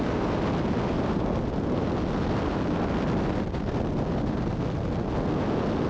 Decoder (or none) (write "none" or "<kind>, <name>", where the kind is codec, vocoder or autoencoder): none